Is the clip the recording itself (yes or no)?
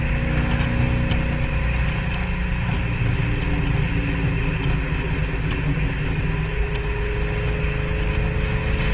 yes